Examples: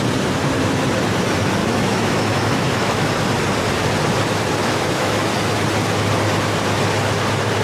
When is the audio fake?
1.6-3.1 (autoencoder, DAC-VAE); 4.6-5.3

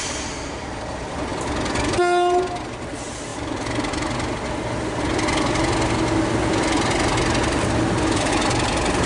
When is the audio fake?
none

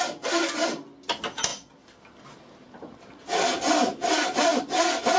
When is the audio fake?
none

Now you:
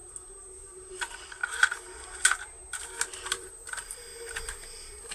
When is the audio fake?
0.9-1.4 (vocoder, BigVGAN v2); 3.1-4.1